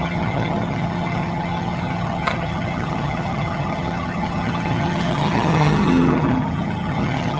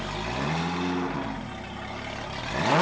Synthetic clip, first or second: first